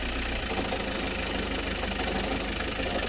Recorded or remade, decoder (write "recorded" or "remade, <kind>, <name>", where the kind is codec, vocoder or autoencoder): recorded